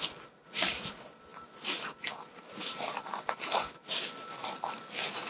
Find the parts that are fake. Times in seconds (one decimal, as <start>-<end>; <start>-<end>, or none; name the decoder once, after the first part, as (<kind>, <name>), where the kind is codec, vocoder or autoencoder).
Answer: 1.3-3.7 (vocoder, BigVGAN v2)